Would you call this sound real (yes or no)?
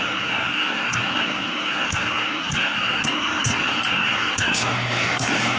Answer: no